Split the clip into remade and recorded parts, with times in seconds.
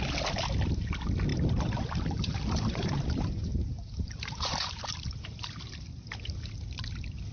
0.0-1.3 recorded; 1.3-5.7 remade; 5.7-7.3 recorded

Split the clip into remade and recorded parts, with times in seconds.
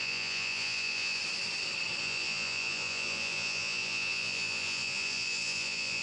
0.0-1.2 remade; 1.2-2.0 recorded; 2.0-6.0 remade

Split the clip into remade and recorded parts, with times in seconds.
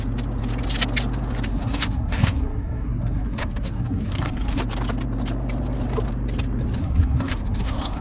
0.0-1.5 recorded; 1.5-4.6 remade; 4.6-6.8 recorded; 6.8-8.0 remade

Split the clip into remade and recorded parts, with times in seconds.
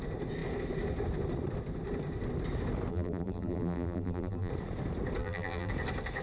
0.0-2.9 recorded; 2.9-4.5 remade; 4.5-5.2 recorded; 5.2-5.7 remade; 5.7-6.2 recorded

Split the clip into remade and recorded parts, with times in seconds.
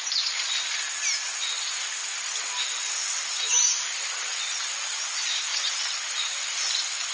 0.0-7.1 recorded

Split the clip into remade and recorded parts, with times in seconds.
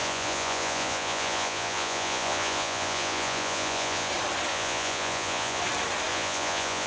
0.0-4.1 remade; 4.1-4.5 recorded; 4.5-5.6 remade; 5.6-6.1 recorded; 6.1-6.9 remade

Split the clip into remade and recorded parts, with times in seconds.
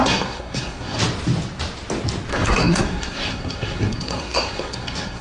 0.0-1.0 remade; 1.0-2.3 recorded; 2.3-5.2 remade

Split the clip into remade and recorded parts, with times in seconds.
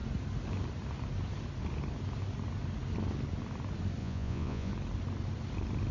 0.0-4.0 recorded; 4.0-4.7 remade; 4.7-5.9 recorded